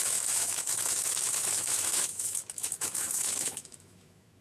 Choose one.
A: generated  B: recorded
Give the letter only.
A